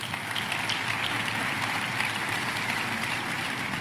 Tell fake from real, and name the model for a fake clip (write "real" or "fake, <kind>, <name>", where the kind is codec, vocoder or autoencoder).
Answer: real